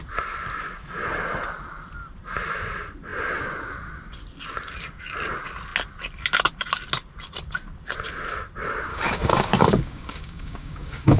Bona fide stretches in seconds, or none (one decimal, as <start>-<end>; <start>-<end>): 0.0-8.9